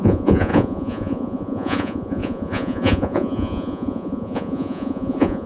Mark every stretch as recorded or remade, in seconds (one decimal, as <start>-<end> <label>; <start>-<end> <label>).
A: 0.0-5.5 remade